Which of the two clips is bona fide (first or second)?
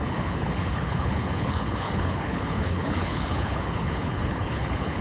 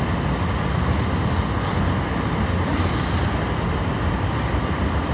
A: second